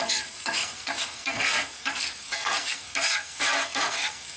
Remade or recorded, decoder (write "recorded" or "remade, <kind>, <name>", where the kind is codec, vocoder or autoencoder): remade, codec, SNAC